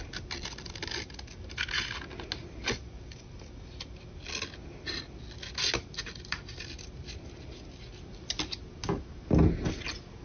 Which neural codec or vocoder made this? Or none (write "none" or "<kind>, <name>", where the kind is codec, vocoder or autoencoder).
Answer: none